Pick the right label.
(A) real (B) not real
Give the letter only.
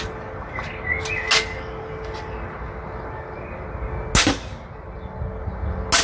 A